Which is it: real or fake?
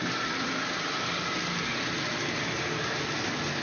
real